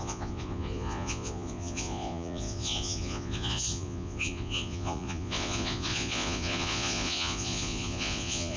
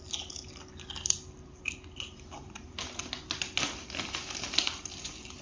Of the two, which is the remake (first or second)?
first